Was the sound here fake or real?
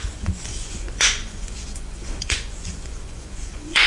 fake